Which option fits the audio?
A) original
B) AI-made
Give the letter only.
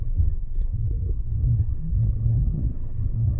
B